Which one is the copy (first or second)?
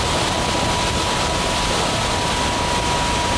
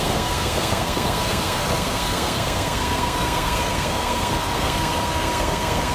second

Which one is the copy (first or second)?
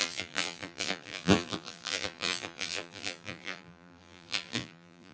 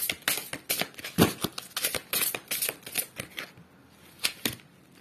first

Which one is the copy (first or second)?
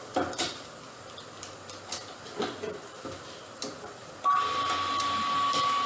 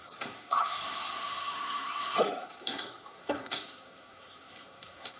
second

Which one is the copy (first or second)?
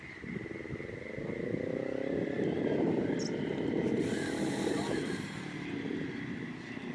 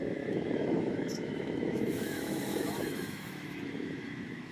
second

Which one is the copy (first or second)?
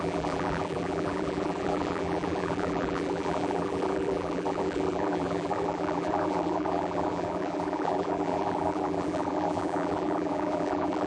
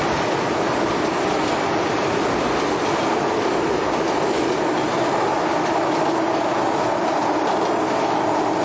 first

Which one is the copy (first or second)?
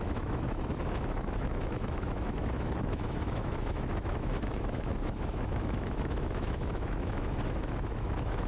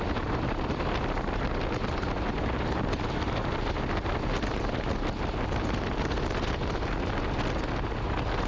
first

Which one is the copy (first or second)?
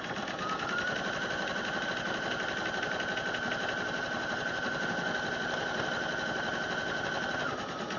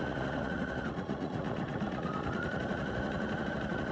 second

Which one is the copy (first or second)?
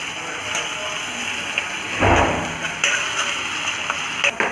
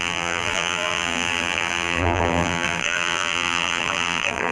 second